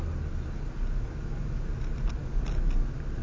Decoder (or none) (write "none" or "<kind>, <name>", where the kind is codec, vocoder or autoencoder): none